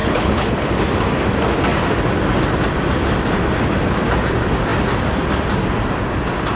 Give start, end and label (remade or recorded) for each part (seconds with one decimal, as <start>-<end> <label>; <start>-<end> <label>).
0.0-0.7 remade; 0.7-6.6 recorded